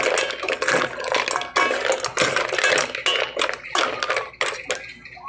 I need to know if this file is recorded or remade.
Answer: recorded